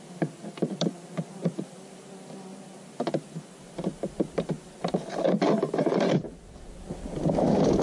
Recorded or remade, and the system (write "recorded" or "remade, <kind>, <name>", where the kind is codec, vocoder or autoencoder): recorded